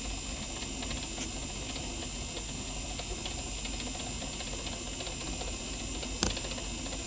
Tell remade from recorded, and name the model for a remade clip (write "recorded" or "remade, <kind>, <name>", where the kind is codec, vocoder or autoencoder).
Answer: recorded